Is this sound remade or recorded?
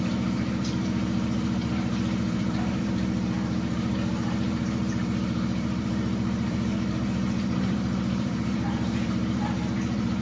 remade